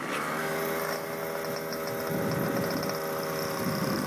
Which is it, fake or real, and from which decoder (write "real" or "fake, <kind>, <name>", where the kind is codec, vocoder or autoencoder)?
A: real